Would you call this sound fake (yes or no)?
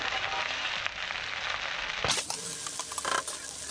no